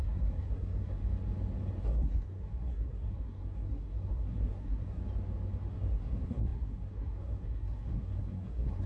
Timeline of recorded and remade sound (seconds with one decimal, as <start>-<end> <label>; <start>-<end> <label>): 0.0-1.0 remade; 1.0-1.8 recorded; 1.8-5.0 remade; 5.0-5.7 recorded; 5.7-8.9 remade

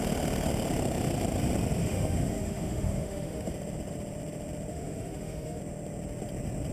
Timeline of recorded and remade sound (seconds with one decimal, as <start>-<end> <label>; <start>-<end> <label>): 0.0-1.8 recorded; 1.8-3.5 remade; 3.5-4.7 recorded; 4.7-5.6 remade; 5.6-6.7 recorded

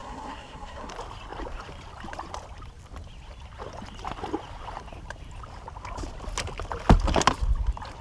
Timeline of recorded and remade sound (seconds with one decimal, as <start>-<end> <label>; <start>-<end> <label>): 0.0-0.9 remade; 0.9-8.0 recorded

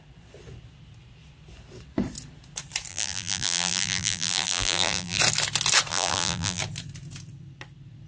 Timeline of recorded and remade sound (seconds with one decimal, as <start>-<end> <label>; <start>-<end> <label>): 0.0-2.9 recorded; 2.9-5.2 remade; 5.2-5.9 recorded; 5.9-6.6 remade; 6.6-8.1 recorded

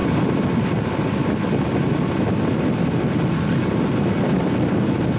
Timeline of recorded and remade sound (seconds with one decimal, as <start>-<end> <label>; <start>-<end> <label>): 0.0-5.2 recorded